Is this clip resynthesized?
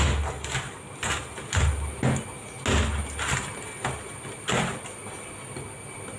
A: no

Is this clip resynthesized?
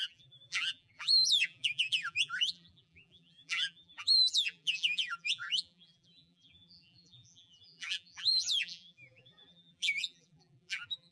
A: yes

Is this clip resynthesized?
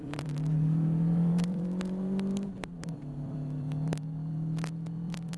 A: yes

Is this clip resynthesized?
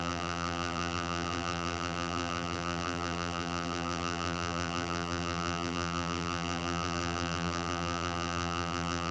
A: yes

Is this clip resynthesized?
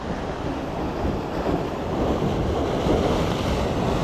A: no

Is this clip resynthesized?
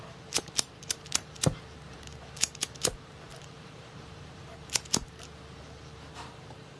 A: yes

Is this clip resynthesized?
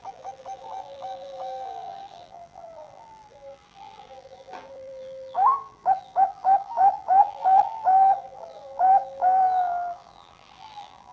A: yes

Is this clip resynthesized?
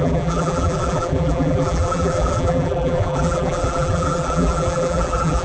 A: yes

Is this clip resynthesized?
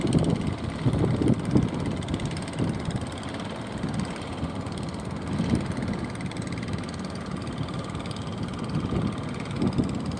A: no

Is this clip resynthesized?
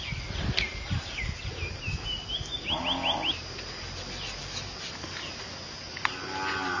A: no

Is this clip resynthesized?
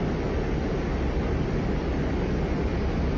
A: no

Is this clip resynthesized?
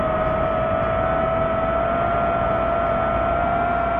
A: no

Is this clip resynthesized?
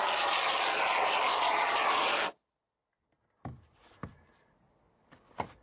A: no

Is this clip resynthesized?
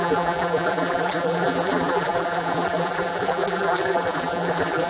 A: yes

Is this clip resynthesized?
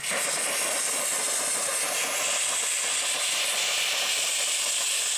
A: no